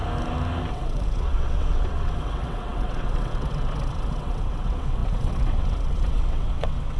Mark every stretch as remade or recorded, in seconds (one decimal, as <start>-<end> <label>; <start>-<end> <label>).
0.0-0.7 recorded; 0.7-7.0 remade